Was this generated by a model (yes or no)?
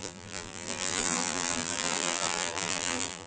yes